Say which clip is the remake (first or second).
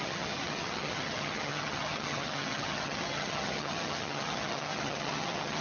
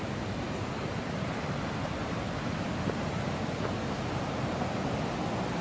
first